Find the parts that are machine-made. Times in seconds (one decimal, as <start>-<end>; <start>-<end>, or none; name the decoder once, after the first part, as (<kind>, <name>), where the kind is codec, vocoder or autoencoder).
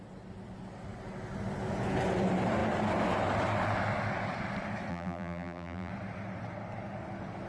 4.9-5.9 (vocoder, BigVGAN v2)